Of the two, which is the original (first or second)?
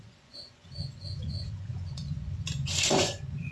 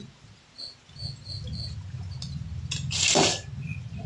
second